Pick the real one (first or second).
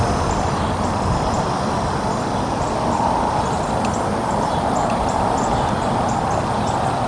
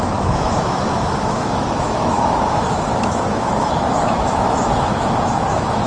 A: first